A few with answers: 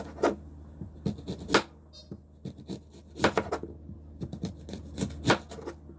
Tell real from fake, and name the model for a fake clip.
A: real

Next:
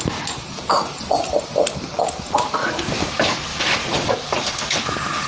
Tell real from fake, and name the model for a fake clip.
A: real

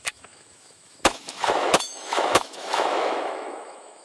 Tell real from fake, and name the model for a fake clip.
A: fake, autoencoder, DAC-VAE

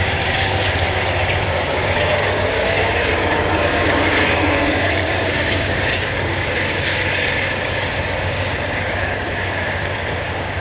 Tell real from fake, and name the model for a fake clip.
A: fake, codec, DAC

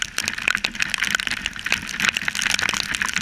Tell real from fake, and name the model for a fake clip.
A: real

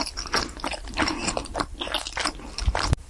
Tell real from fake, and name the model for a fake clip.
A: real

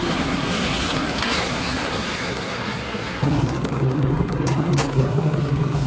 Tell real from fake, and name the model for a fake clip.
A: fake, codec, SNAC